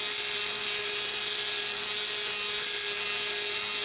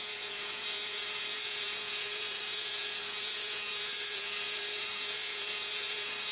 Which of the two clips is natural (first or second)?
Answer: first